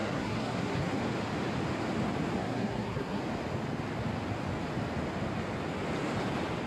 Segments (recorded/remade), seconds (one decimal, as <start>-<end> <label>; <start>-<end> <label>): 0.0-1.0 remade; 1.0-2.4 recorded; 2.4-3.2 remade; 3.2-6.7 recorded